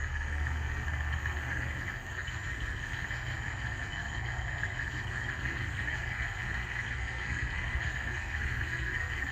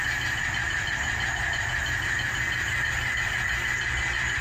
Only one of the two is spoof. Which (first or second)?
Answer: first